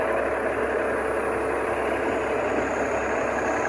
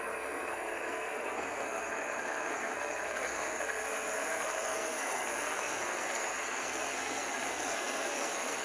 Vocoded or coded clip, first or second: second